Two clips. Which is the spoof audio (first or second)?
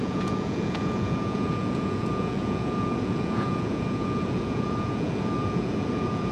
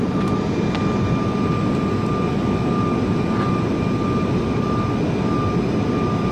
first